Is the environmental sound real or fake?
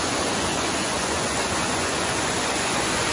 fake